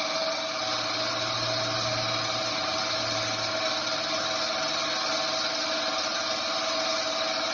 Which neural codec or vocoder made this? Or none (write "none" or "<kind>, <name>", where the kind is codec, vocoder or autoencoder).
none